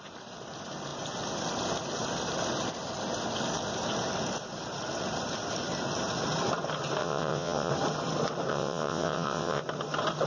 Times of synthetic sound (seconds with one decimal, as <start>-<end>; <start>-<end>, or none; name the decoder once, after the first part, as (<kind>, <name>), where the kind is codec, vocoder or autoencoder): 7.0-7.7 (vocoder, WaveNeXt); 8.5-9.6